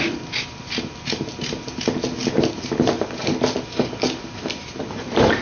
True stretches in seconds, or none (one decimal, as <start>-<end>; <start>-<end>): 0.0-5.4